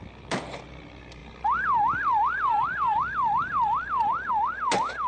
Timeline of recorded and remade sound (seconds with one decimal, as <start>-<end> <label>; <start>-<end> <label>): 0.0-5.1 recorded